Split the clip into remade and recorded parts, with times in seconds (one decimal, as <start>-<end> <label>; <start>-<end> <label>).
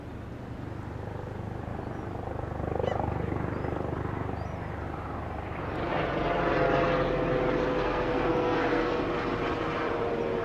0.0-7.7 recorded; 7.7-9.0 remade; 9.0-10.4 recorded